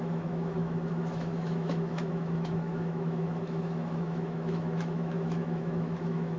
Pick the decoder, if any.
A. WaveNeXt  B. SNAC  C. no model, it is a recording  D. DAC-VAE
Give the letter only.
D